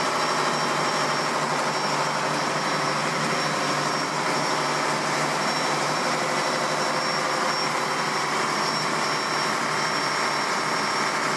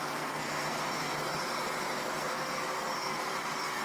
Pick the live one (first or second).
first